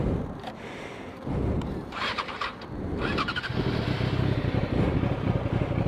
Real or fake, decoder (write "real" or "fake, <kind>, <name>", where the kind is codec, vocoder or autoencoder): fake, vocoder, BigVGAN v2